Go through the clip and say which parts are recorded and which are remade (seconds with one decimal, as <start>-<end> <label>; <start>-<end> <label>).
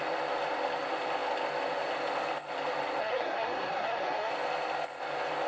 0.0-3.0 recorded; 3.0-4.3 remade; 4.3-5.5 recorded